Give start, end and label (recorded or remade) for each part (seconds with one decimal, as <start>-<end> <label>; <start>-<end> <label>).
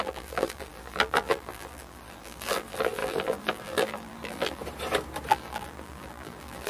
0.0-4.6 remade; 4.6-5.3 recorded; 5.3-6.7 remade